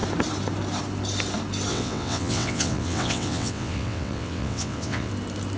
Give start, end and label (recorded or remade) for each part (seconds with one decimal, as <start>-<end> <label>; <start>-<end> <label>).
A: 0.0-1.7 recorded; 1.7-5.1 remade; 5.1-5.6 recorded